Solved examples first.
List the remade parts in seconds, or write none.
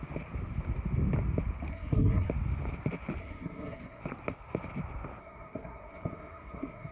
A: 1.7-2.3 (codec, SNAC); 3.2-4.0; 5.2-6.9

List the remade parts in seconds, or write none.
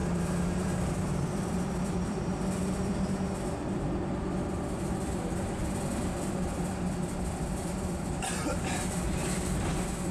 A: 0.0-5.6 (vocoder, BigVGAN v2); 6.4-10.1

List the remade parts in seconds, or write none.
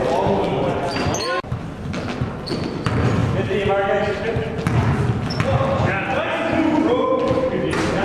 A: none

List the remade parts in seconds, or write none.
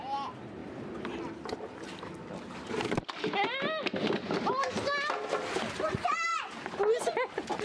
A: 0.6-1.2 (vocoder, BigVGAN v2)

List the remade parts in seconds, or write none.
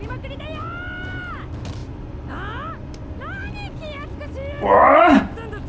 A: none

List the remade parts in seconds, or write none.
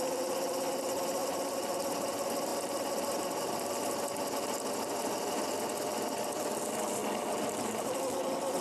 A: none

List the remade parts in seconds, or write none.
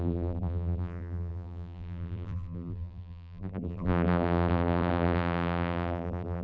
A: 0.0-6.4 (vocoder, BigVGAN v2)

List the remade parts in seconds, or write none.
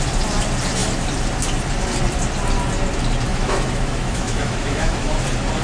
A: 3.3-5.1 (autoencoder, DAC-VAE)